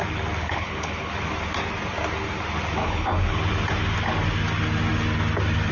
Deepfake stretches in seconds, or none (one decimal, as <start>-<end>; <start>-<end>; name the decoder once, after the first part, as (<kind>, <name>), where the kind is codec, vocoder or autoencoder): 0.4-1.1 (codec, HILCodec); 2.8-3.4